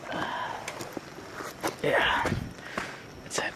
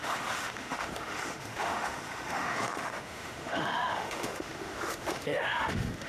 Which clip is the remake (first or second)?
second